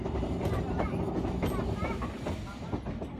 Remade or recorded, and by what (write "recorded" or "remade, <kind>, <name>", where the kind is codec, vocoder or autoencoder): recorded